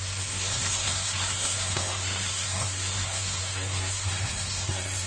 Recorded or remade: remade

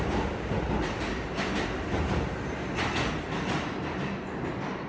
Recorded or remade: recorded